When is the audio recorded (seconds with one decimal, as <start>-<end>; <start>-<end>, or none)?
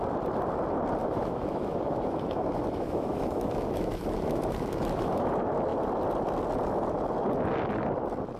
0.0-1.0; 5.3-8.4